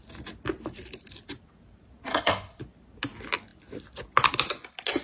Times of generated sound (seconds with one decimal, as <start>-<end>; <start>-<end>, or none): 2.1-2.6